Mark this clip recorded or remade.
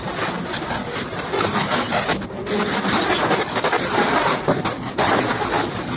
recorded